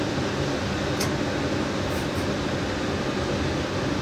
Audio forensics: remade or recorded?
recorded